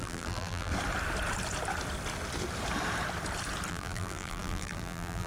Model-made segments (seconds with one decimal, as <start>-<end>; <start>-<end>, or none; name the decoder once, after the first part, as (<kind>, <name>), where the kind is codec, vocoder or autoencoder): 0.0-0.7 (vocoder, BigVGAN v2); 3.7-5.3